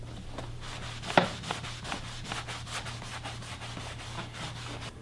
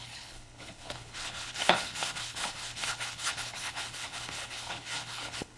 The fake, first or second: second